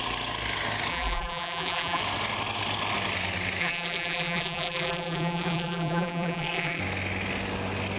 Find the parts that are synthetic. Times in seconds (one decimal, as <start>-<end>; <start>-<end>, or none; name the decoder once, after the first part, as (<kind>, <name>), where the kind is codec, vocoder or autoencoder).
0.9-2.0 (vocoder, BigVGAN v2); 3.6-6.8